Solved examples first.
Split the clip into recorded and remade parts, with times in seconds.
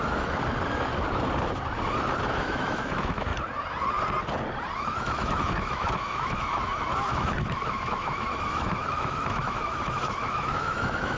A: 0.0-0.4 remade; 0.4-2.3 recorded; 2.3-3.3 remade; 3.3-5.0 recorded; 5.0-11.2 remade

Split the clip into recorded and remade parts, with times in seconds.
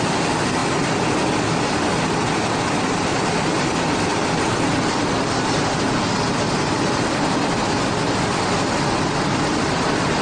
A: 0.0-10.2 recorded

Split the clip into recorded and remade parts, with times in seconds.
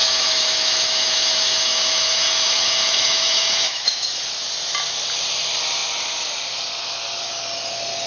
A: 0.0-4.2 remade; 4.2-8.1 recorded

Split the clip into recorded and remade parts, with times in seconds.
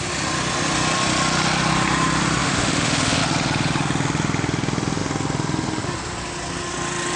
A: 0.0-2.4 recorded; 2.4-3.2 remade; 3.2-7.2 recorded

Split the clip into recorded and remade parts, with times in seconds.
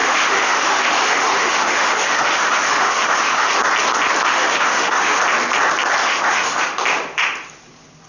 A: 0.0-3.5 remade; 3.5-4.3 recorded; 4.3-5.2 remade; 5.2-6.0 recorded; 6.0-6.6 remade; 6.6-8.1 recorded